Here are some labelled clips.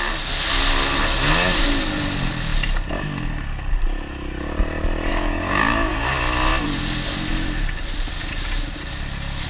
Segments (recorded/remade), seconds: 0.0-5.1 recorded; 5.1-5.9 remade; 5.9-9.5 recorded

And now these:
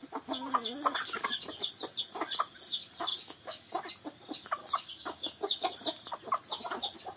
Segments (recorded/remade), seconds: 0.0-3.1 recorded; 3.1-3.8 remade; 3.8-4.6 recorded; 4.6-5.7 remade; 5.7-7.2 recorded

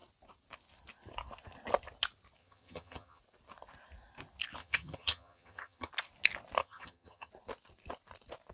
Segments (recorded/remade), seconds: 0.0-2.4 recorded; 2.4-3.2 remade; 3.2-4.6 recorded; 4.6-5.9 remade; 5.9-6.6 recorded; 6.6-7.3 remade; 7.3-8.5 recorded

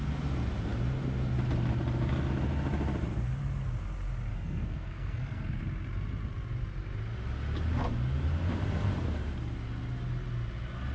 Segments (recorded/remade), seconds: 0.0-4.3 recorded; 4.3-5.6 remade; 5.6-10.9 recorded

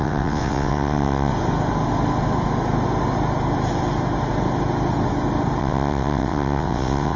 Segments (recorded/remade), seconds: 0.0-1.3 remade; 1.3-5.6 recorded; 5.6-7.2 remade